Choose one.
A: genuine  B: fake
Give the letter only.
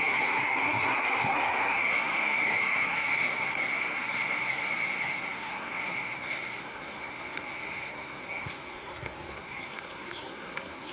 B